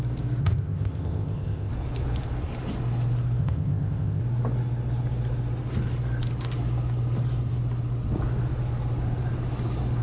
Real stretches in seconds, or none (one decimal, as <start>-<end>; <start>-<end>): 0.0-0.4; 1.7-3.4; 4.2-10.0